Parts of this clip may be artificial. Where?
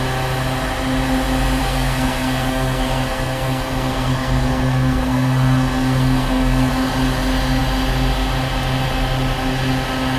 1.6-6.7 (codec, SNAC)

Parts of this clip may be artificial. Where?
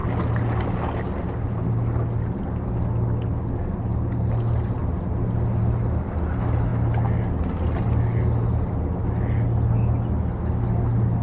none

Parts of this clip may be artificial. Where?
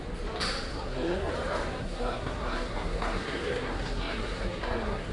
0.7-1.3 (codec, SNAC); 1.8-5.1